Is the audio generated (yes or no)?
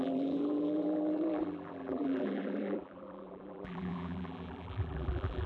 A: yes